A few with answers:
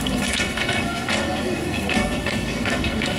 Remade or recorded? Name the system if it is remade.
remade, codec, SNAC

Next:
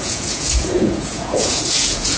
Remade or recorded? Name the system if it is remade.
remade, vocoder, Vocos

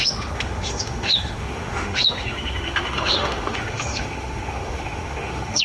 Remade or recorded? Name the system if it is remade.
remade, autoencoder, DAC-VAE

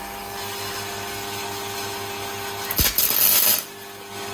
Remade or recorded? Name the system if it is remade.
recorded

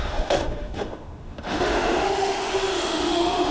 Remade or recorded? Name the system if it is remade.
remade, autoencoder, DAC-VAE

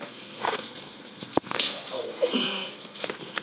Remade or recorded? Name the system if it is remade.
remade, codec, SNAC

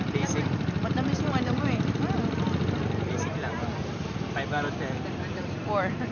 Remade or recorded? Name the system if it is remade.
remade, vocoder, BigVGAN v2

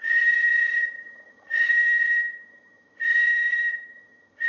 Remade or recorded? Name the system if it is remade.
remade, vocoder, HiFi-GAN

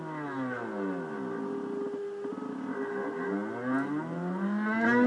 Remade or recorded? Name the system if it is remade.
recorded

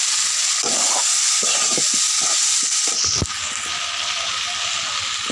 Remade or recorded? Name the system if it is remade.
recorded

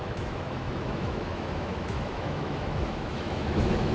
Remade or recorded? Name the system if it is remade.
remade, autoencoder, DAC-VAE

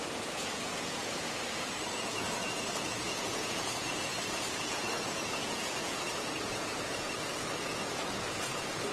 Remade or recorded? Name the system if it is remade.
remade, vocoder, Vocos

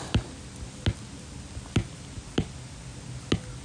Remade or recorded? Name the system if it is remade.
recorded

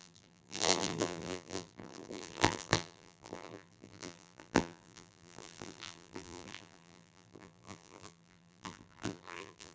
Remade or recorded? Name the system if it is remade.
remade, vocoder, BigVGAN v2